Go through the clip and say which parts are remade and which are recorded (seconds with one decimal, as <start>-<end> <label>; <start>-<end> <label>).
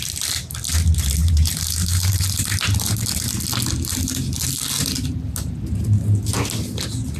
0.0-1.2 recorded; 1.2-2.4 remade; 2.4-7.2 recorded